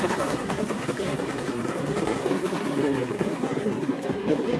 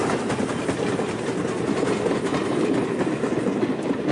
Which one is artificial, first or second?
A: first